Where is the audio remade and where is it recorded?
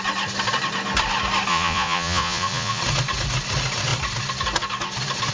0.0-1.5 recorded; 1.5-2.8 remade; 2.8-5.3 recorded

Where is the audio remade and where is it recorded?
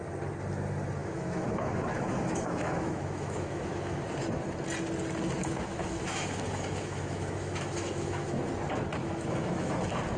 0.0-1.0 recorded; 1.0-4.0 remade; 4.0-5.4 recorded; 5.4-8.5 remade; 8.5-9.0 recorded; 9.0-9.7 remade; 9.7-10.2 recorded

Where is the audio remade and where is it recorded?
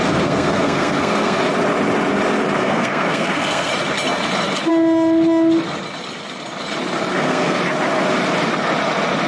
0.0-1.4 remade; 1.4-2.6 recorded; 2.6-3.7 remade; 3.7-7.1 recorded; 7.1-7.6 remade; 7.6-9.3 recorded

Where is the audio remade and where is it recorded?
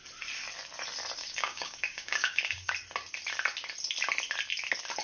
0.0-1.2 recorded; 1.2-2.7 remade; 2.7-5.0 recorded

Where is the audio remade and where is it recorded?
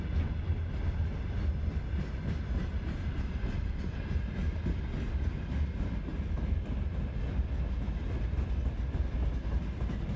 0.0-10.2 recorded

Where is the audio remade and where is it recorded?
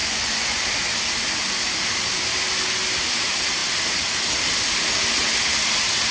0.0-0.6 remade; 0.6-6.1 recorded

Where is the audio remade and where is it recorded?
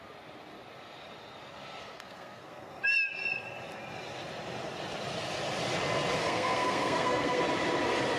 0.0-1.8 recorded; 1.8-2.7 remade; 2.7-6.2 recorded; 6.2-7.4 remade; 7.4-8.2 recorded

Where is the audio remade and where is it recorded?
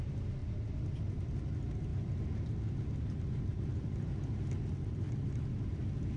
0.0-0.4 recorded; 0.4-1.1 remade; 1.1-1.9 recorded; 1.9-2.6 remade; 2.6-3.5 recorded; 3.5-4.2 remade; 4.2-6.2 recorded